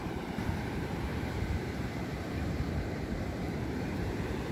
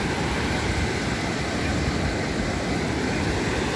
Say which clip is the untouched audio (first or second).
second